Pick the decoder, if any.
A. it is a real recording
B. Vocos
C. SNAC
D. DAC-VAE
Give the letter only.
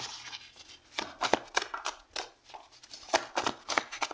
A